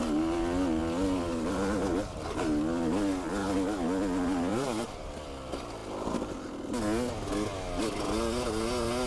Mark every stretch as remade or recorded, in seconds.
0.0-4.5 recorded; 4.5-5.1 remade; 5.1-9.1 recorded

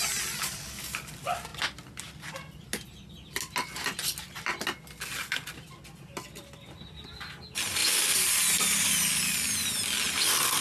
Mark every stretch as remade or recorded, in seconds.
0.0-7.8 recorded; 7.8-8.3 remade; 8.3-10.6 recorded

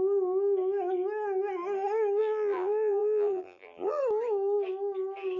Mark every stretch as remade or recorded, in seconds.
0.0-2.2 recorded; 2.2-4.0 remade; 4.0-5.4 recorded

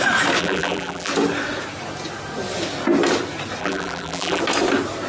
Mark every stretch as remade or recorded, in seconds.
0.0-0.4 recorded; 0.4-1.1 remade; 1.1-3.6 recorded; 3.6-4.4 remade; 4.4-5.1 recorded

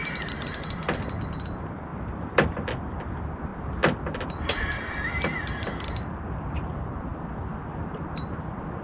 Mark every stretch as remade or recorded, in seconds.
0.0-1.9 recorded; 1.9-2.7 remade; 2.7-8.8 recorded